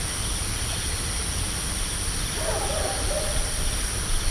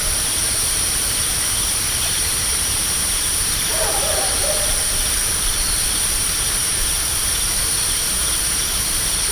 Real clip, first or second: first